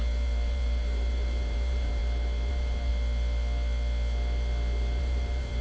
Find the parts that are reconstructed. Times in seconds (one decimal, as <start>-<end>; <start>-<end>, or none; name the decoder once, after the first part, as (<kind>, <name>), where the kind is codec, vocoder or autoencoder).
0.0-2.0 (vocoder, BigVGAN v2); 2.5-2.9; 5.0-5.6